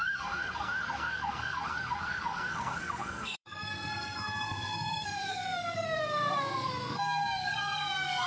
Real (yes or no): no